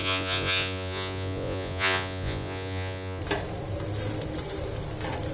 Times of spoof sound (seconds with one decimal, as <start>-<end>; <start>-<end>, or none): 0.0-3.2